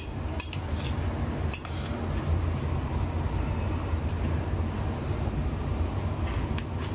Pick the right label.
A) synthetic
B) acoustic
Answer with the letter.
B